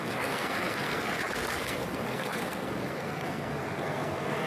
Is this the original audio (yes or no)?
no